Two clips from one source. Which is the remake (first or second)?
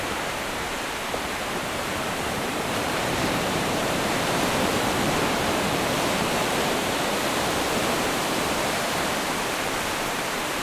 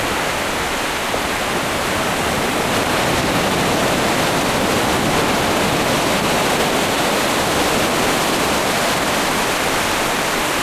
first